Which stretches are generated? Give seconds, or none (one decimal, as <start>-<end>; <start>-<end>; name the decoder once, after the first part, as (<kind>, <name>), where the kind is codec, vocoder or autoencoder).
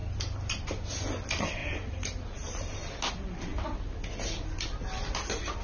none